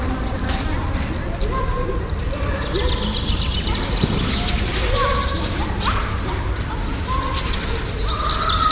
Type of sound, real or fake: real